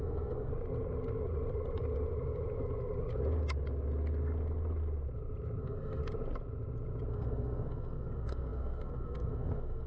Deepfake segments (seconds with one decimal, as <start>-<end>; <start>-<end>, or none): 0.0-0.5; 5.6-6.0; 7.1-9.9

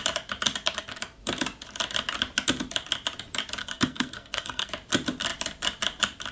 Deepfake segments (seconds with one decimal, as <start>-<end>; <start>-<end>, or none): 3.6-4.7

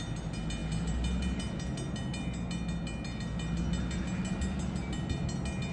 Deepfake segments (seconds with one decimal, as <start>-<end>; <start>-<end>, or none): none